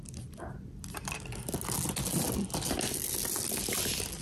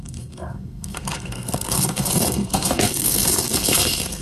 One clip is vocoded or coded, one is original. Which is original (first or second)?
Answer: first